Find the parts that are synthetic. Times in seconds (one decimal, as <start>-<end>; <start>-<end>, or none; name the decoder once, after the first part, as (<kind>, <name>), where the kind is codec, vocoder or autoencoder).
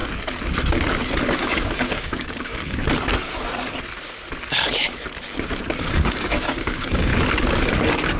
1.3-2.8 (codec, DAC); 5.8-7.1